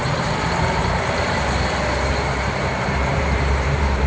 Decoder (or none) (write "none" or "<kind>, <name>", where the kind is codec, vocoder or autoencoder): vocoder, BigVGAN v2